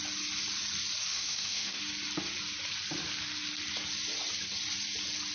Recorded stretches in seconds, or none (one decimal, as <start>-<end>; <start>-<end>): 0.0-1.1; 1.8-5.3